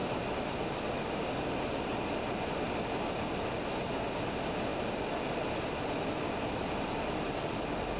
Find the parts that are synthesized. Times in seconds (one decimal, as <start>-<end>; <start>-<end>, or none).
none